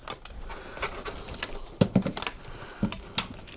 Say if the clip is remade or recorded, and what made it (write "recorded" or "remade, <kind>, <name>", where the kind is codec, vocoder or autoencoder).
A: recorded